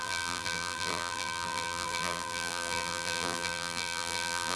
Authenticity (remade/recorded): remade